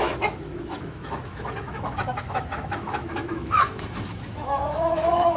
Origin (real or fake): fake